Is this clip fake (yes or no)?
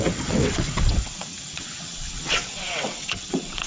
yes